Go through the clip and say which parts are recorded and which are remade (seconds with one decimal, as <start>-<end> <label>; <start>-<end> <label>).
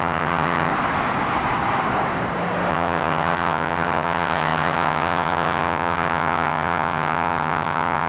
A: 0.0-0.7 remade; 0.7-2.7 recorded; 2.7-8.1 remade